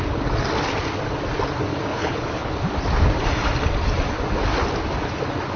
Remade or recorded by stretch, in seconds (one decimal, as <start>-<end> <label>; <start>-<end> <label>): 0.0-1.9 recorded; 1.9-2.5 remade; 2.5-5.6 recorded